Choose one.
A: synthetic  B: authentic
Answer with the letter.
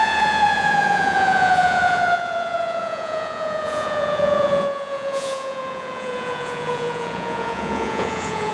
A